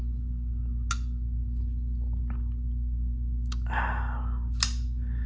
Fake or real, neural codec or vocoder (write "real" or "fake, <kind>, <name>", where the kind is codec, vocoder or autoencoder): real